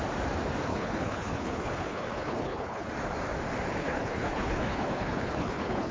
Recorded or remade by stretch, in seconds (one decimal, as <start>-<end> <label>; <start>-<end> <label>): 0.0-0.7 recorded; 0.7-2.9 remade; 2.9-3.8 recorded; 3.8-5.9 remade